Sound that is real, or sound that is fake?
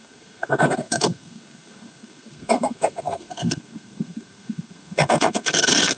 fake